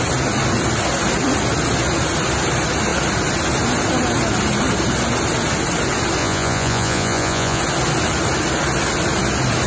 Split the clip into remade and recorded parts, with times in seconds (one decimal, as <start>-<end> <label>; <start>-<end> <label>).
0.0-6.2 recorded; 6.2-7.6 remade; 7.6-9.7 recorded